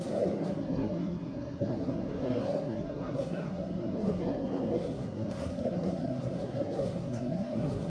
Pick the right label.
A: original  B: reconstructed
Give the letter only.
B